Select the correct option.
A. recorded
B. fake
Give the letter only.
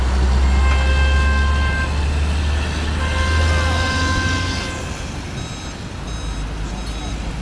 A